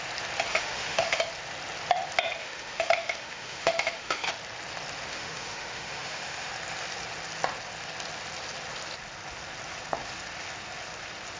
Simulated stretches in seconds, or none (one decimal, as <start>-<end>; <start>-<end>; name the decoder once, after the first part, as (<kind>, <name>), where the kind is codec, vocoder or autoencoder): 0.5-1.2 (autoencoder, DAC-VAE); 2.4-4.3; 5.1-6.5